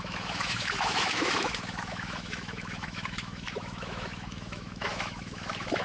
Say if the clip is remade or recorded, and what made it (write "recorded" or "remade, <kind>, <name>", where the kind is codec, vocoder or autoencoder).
remade, autoencoder, DAC-VAE